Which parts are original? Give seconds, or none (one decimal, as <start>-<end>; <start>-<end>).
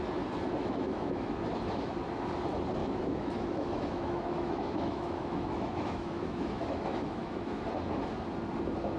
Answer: 0.0-0.6; 1.3-2.8; 7.6-9.0